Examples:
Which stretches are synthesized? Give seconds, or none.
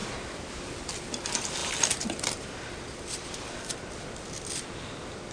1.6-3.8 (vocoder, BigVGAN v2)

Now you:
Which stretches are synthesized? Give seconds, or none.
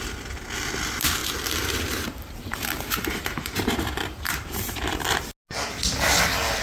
1.2-5.2 (vocoder, BigVGAN v2)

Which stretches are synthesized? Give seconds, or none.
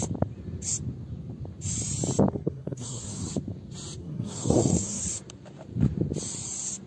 2.3-3.3 (codec, SNAC); 4.0-5.0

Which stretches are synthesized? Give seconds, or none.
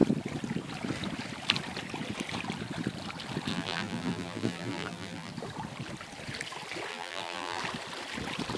3.5-5.3 (vocoder, BigVGAN v2); 6.9-7.6